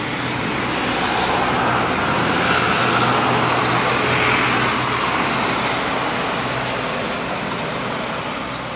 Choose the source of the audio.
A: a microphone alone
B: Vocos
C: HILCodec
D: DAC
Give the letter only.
A